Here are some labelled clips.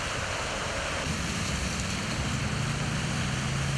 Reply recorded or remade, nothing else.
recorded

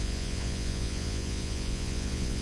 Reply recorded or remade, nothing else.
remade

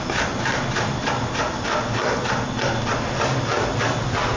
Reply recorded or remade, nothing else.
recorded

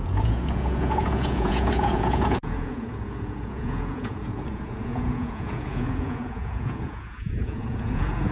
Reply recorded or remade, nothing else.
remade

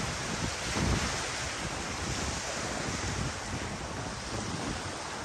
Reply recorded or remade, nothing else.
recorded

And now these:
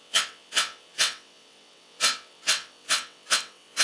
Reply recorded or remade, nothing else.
remade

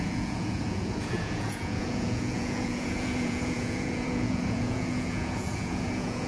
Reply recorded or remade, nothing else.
remade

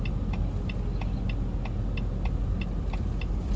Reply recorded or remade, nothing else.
recorded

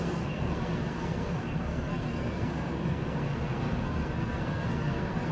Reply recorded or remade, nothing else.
remade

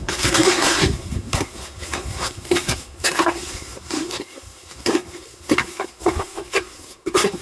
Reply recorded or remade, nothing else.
remade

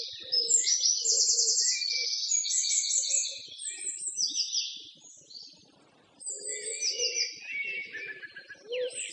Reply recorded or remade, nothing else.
recorded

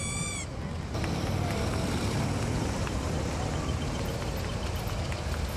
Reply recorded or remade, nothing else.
recorded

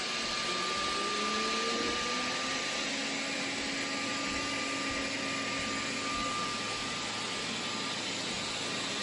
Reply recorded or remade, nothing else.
recorded